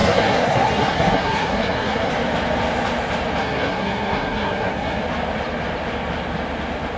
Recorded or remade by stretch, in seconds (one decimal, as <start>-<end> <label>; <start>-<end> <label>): 0.0-2.1 remade; 2.1-3.4 recorded; 3.4-5.0 remade; 5.0-7.0 recorded